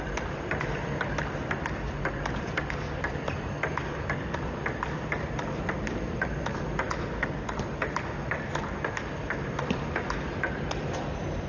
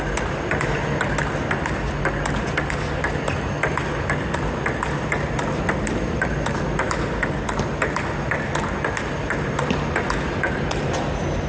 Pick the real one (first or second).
second